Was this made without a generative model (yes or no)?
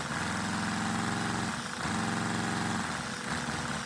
yes